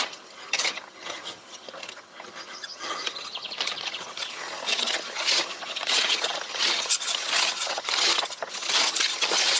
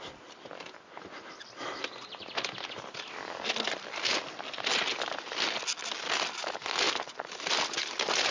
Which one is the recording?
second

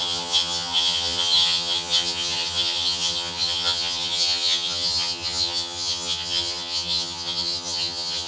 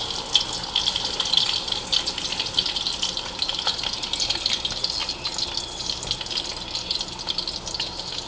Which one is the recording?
second